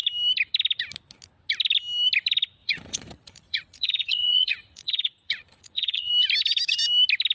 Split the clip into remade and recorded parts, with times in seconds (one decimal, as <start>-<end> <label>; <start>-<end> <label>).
0.0-2.6 recorded; 2.6-6.1 remade; 6.1-7.3 recorded